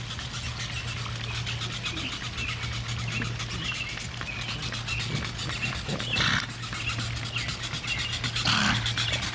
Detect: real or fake real